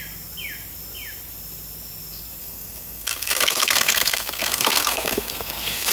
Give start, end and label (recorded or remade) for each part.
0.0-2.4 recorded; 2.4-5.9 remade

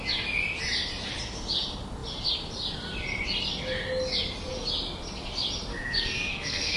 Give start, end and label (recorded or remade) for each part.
0.0-5.7 recorded; 5.7-6.8 remade

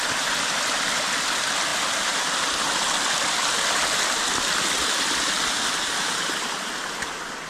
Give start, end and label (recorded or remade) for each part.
0.0-7.5 recorded

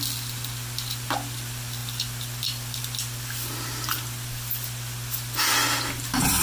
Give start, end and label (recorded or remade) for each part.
0.0-6.4 recorded